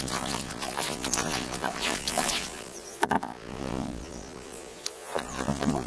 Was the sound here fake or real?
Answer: fake